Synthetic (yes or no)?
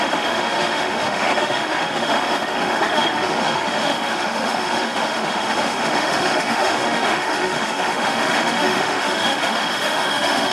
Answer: yes